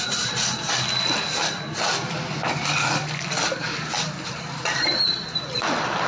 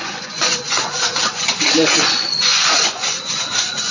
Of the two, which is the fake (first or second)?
second